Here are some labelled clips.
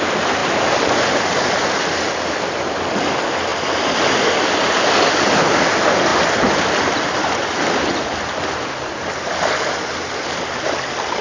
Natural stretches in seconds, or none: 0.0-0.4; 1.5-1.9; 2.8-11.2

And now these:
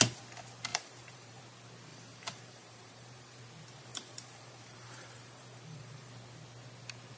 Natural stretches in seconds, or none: 0.0-0.7; 1.4-1.9; 3.4-3.9; 6.1-7.2

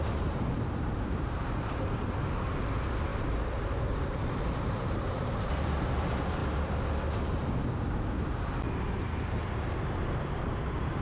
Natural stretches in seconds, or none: 6.4-9.0

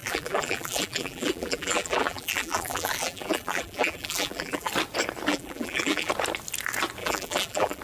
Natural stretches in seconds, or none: 4.7-5.3; 6.1-7.0

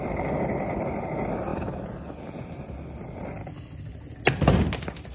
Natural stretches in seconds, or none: 0.0-5.1